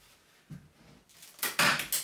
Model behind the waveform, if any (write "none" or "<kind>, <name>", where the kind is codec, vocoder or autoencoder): none